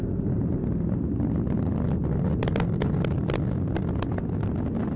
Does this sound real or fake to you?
real